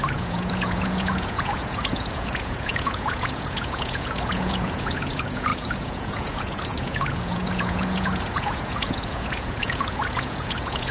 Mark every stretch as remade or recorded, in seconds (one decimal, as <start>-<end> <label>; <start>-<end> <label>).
0.0-10.9 remade